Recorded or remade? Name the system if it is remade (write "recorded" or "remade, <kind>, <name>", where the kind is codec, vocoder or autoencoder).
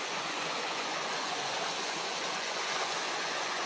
remade, vocoder, Vocos